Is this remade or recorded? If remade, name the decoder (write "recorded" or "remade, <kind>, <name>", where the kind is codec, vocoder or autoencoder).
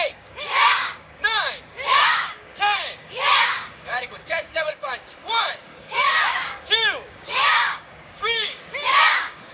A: remade, codec, DAC